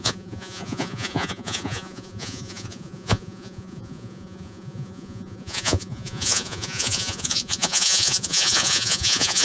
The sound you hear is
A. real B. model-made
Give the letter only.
B